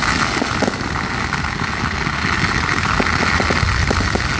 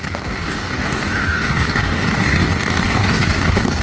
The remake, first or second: second